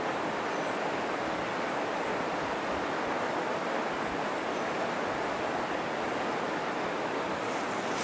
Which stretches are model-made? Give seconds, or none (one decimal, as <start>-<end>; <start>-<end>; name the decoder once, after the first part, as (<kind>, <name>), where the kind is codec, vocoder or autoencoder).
none